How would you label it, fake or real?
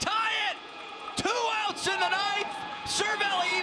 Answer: fake